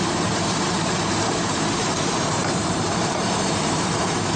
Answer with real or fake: fake